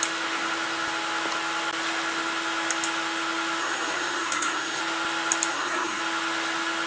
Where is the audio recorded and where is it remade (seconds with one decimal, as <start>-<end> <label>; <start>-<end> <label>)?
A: 0.0-3.6 recorded; 3.6-4.8 remade; 4.8-5.5 recorded; 5.5-6.0 remade; 6.0-6.9 recorded